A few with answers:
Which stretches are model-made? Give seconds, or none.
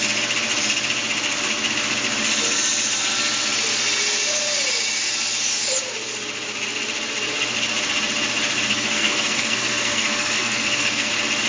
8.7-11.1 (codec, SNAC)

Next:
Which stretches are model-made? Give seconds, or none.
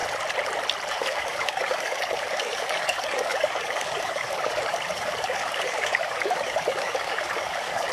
0.9-7.9 (codec, DAC)